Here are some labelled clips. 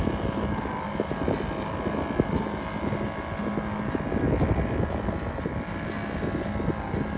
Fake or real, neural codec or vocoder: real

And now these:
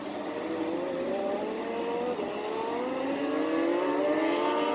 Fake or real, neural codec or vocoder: real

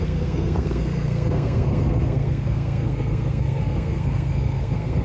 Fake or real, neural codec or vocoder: fake, codec, SNAC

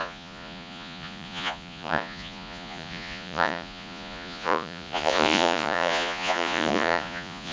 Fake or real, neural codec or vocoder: fake, vocoder, Vocos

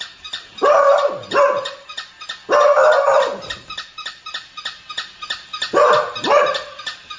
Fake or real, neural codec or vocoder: real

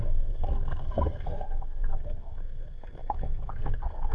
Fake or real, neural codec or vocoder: fake, codec, SNAC